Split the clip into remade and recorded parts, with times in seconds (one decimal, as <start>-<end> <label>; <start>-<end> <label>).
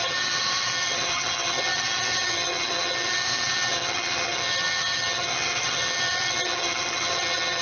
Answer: 0.0-7.6 remade